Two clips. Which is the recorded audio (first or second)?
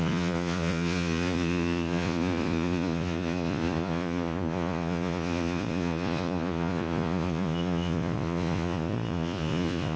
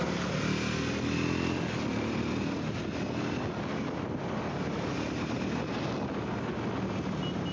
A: second